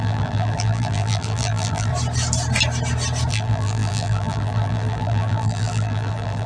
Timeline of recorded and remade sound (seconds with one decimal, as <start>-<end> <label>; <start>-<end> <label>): 0.0-1.9 remade; 1.9-3.3 recorded; 3.3-6.5 remade